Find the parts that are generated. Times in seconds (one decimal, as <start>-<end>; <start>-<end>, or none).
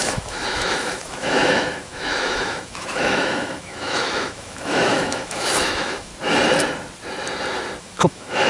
0.0-6.1; 7.8-8.5